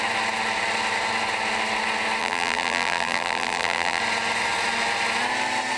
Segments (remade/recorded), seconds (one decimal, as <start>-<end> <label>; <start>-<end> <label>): 0.0-2.2 recorded; 2.2-4.0 remade; 4.0-5.8 recorded